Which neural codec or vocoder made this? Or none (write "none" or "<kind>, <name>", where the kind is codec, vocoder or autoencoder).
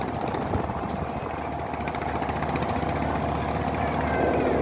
none